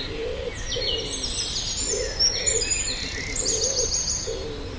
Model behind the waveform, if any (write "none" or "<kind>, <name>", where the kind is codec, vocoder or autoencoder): none